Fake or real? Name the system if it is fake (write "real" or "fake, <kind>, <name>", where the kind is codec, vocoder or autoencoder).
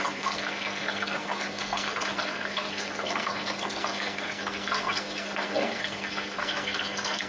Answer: fake, codec, SNAC